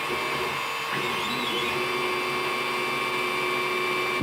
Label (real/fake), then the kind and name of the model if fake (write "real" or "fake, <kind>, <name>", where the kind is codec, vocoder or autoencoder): real